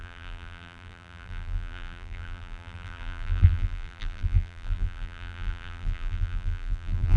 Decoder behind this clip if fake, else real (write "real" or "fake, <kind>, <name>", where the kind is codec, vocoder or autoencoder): fake, vocoder, BigVGAN v2